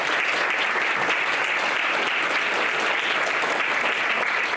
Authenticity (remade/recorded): recorded